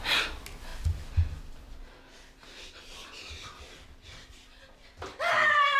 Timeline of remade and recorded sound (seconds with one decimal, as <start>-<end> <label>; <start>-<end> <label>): 0.0-5.8 recorded